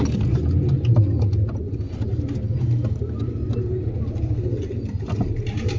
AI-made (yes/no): no